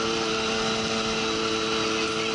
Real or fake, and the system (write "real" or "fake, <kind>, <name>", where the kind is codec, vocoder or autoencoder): real